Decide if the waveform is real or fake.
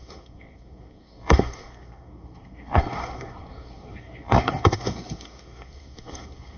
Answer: fake